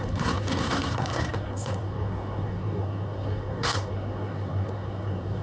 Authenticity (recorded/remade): remade